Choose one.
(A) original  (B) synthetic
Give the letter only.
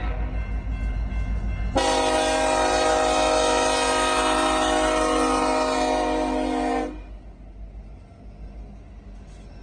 A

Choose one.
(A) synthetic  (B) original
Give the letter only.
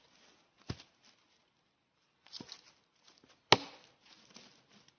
B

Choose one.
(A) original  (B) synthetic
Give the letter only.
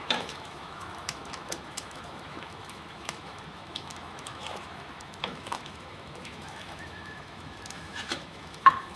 B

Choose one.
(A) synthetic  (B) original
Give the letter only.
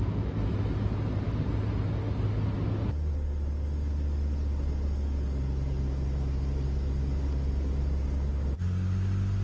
B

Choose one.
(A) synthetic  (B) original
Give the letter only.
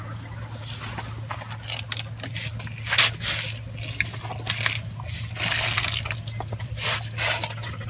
B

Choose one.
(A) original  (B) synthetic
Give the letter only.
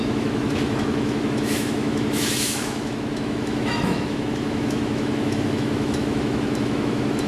B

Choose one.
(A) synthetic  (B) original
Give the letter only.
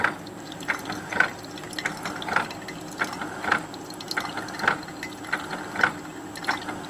B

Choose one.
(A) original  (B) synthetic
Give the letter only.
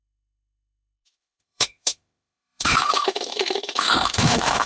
B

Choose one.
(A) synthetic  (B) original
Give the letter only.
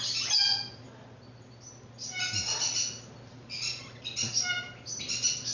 B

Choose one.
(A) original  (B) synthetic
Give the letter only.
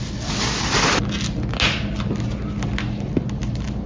A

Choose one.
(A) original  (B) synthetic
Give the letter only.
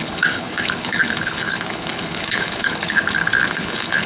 B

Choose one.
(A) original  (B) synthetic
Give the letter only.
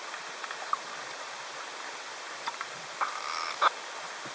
A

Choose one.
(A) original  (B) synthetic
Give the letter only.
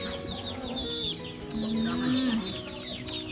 A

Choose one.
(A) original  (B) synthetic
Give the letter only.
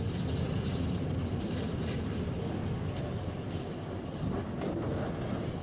A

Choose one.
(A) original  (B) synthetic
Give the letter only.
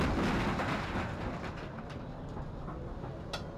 A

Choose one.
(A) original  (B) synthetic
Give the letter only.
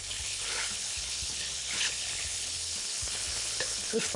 B